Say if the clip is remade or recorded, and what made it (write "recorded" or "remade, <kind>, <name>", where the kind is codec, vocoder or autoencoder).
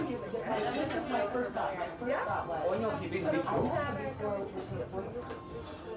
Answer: recorded